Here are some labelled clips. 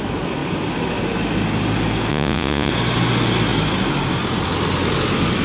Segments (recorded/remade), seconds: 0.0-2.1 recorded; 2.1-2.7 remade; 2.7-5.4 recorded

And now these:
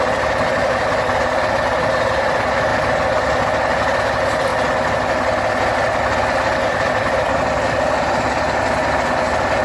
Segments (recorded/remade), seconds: 0.0-9.6 recorded

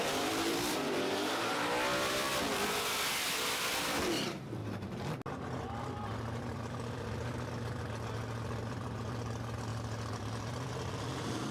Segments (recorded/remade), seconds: 0.0-4.6 remade; 4.6-6.4 recorded; 6.4-9.7 remade; 9.7-10.2 recorded; 10.2-11.5 remade

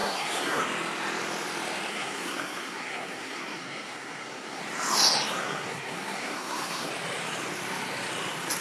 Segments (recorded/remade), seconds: 0.0-0.6 remade; 0.6-1.9 recorded; 1.9-4.6 remade; 4.6-5.3 recorded; 5.3-6.9 remade; 6.9-8.6 recorded

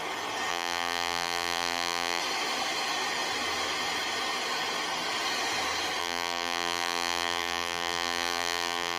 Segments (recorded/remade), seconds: 0.0-0.5 recorded; 0.5-2.2 remade; 2.2-6.0 recorded; 6.0-9.0 remade